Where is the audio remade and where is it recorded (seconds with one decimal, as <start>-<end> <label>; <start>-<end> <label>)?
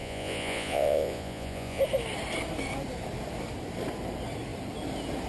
0.0-1.8 remade; 1.8-5.3 recorded